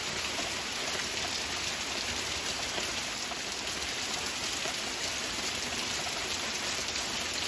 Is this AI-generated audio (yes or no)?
no